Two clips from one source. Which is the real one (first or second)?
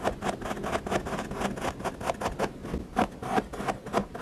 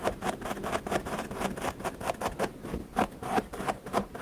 first